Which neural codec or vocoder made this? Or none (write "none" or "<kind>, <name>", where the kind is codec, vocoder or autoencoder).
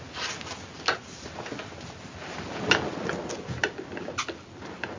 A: none